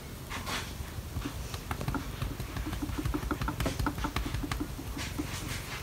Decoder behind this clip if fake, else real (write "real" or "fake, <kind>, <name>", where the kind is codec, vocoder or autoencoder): real